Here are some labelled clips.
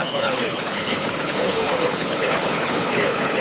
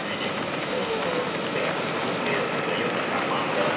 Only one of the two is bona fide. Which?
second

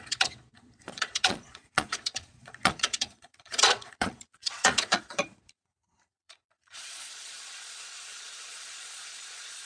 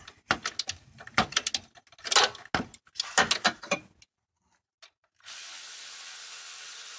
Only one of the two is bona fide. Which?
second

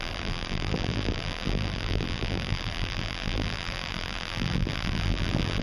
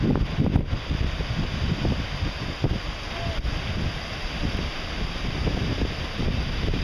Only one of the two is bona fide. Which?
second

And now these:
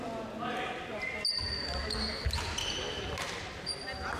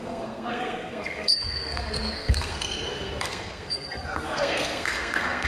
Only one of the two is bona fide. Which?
first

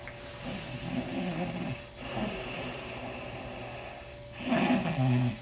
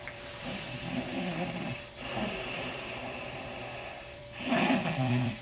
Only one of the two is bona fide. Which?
first